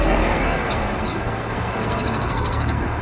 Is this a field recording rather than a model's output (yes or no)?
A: no